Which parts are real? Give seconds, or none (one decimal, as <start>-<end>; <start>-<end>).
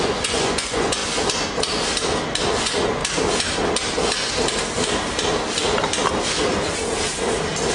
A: 1.0-2.6; 3.0-7.7